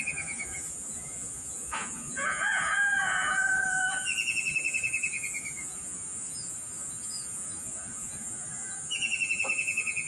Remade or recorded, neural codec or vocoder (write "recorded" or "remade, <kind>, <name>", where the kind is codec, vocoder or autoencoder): remade, vocoder, Vocos